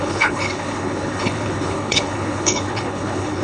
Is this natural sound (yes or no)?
no